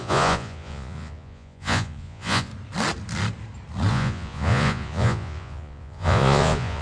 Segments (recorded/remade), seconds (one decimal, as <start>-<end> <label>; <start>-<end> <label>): 0.0-2.5 remade; 2.5-3.9 recorded; 3.9-6.8 remade